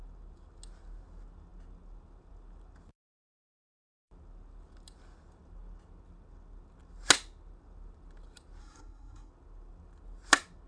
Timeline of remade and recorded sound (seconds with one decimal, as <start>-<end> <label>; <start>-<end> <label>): 0.0-8.6 recorded; 8.6-9.3 remade; 9.3-10.7 recorded